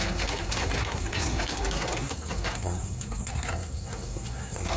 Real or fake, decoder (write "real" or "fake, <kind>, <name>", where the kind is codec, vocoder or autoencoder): fake, codec, SNAC